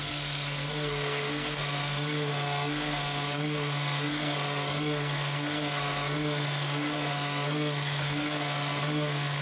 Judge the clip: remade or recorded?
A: remade